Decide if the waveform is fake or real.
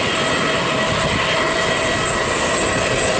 real